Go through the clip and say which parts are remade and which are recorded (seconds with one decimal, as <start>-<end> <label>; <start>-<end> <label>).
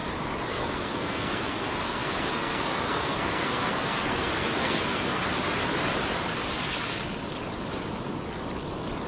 0.0-0.5 recorded; 0.5-5.2 remade; 5.2-9.1 recorded